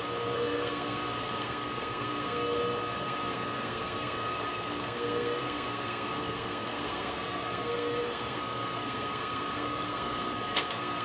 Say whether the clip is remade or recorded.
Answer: remade